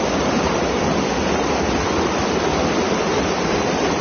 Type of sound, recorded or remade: recorded